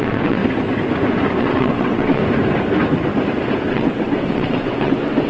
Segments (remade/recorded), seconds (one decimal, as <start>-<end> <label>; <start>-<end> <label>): 0.0-0.4 remade; 0.4-1.4 recorded; 1.4-2.2 remade; 2.2-3.7 recorded; 3.7-5.3 remade